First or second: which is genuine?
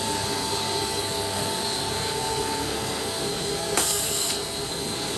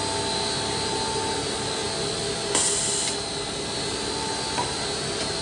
second